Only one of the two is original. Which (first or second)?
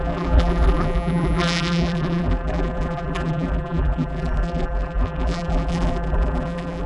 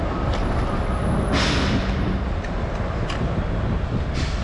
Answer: second